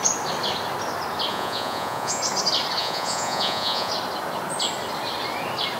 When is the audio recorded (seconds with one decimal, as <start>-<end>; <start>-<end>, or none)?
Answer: 0.0-1.3; 2.2-2.8; 3.9-5.8